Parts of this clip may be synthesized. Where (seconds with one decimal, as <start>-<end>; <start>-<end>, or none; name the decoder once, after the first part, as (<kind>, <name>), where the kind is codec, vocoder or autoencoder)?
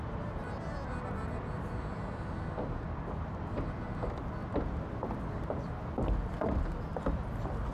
none